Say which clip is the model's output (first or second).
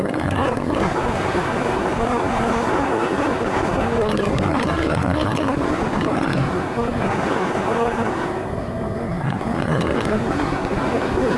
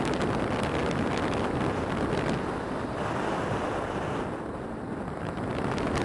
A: first